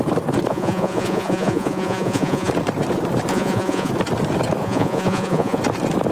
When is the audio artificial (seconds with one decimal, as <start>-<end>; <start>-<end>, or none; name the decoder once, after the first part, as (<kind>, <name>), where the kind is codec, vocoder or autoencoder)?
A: 0.5-2.5 (vocoder, Vocos); 3.3-3.9; 4.6-5.6